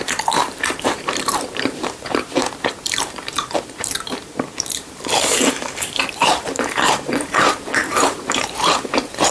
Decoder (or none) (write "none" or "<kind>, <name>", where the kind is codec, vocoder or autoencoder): vocoder, BigVGAN v2